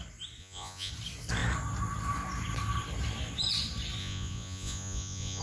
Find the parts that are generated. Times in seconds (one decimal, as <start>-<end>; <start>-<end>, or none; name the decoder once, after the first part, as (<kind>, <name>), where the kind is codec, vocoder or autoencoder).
0.4-0.9 (vocoder, Vocos); 4.0-5.4